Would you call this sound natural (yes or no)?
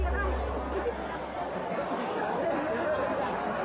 yes